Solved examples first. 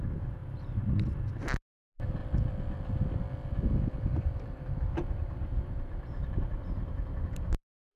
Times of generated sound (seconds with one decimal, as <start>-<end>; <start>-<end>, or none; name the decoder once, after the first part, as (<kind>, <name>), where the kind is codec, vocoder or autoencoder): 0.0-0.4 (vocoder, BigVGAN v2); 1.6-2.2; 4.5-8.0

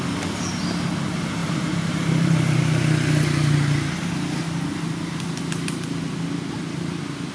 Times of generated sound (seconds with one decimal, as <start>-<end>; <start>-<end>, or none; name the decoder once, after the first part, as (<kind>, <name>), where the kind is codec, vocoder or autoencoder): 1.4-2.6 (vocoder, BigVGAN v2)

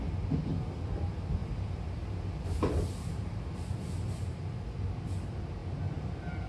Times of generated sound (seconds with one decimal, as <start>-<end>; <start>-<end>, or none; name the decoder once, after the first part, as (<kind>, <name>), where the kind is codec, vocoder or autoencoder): 1.4-4.4 (vocoder, BigVGAN v2)

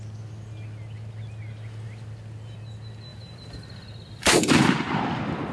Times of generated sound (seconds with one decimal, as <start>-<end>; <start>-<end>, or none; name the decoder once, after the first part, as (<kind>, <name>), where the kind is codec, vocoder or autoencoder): 3.1-5.0 (vocoder, BigVGAN v2)

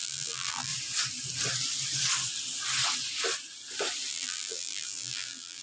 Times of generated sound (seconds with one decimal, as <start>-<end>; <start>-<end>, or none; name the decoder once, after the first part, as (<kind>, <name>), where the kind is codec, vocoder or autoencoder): 0.0-0.7 (vocoder, BigVGAN v2); 4.1-5.6

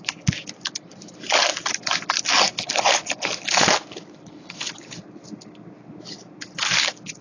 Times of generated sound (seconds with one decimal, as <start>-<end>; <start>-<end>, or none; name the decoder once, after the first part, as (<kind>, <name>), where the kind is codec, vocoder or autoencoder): none

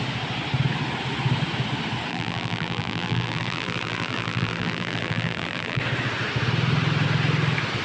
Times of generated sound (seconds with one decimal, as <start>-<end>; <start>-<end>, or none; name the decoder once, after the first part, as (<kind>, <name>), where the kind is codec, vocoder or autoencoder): 2.1-5.8 (vocoder, BigVGAN v2)

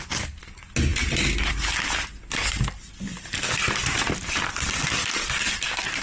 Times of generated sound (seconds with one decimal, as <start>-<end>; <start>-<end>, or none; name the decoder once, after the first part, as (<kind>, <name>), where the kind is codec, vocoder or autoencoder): 3.1-6.0 (vocoder, BigVGAN v2)